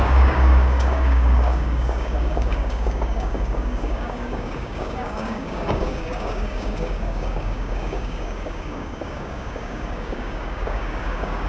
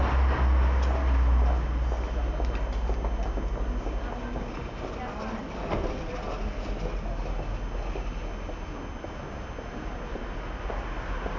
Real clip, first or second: second